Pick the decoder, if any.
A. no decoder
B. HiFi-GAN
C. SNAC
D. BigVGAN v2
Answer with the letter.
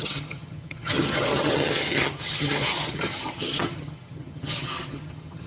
B